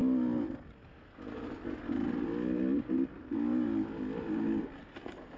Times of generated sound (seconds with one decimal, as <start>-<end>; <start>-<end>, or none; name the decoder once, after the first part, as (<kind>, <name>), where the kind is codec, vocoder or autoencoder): none